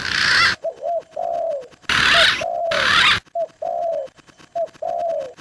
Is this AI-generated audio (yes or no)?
no